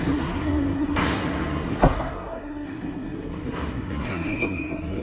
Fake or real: fake